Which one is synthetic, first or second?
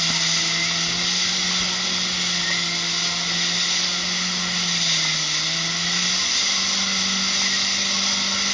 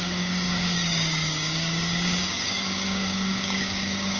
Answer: second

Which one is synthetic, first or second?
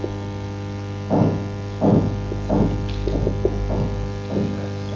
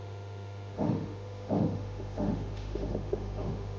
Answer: second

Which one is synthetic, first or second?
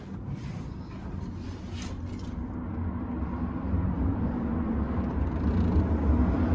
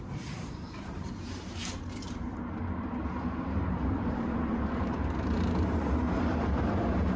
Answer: second